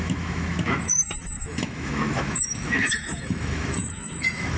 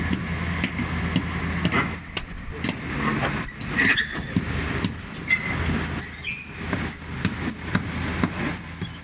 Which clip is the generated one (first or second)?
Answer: first